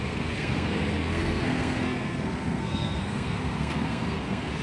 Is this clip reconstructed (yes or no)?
yes